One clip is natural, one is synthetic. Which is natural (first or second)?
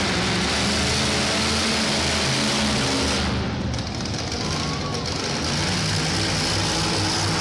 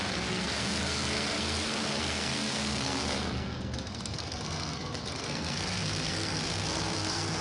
first